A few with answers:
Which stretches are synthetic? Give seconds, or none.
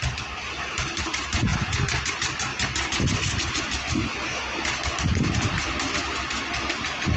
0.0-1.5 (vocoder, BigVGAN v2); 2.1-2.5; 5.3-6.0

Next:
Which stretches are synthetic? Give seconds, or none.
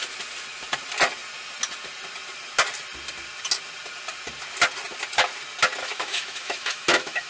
5.8-7.3 (autoencoder, DAC-VAE)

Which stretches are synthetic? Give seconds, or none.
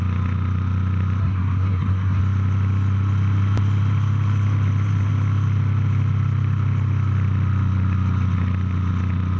1.2-2.2 (codec, SNAC)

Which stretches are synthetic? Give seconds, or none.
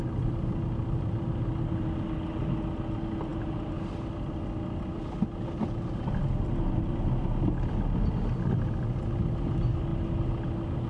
none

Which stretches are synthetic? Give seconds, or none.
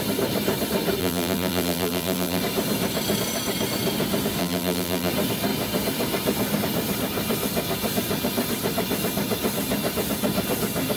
1.0-2.4 (vocoder, BigVGAN v2); 4.4-5.1